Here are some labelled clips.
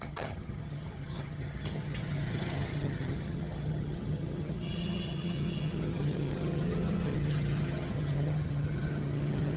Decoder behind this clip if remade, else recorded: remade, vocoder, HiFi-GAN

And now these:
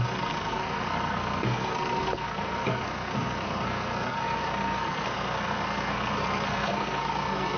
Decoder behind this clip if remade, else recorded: remade, codec, SNAC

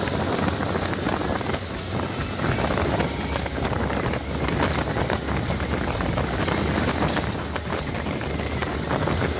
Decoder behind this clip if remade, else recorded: recorded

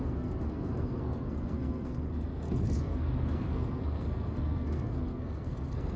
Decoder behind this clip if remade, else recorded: remade, codec, SNAC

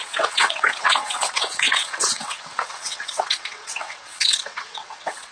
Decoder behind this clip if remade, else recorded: remade, vocoder, WaveNeXt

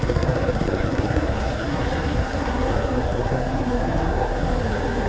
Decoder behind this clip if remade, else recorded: remade, codec, SNAC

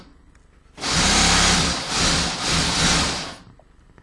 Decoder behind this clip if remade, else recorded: recorded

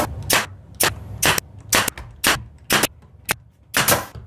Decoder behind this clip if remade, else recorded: recorded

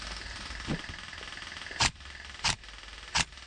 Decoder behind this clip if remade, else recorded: recorded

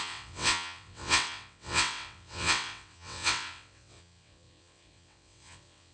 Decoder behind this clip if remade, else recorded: remade, vocoder, WaveNeXt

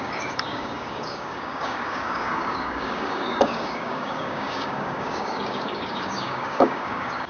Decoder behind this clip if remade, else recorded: remade, codec, DAC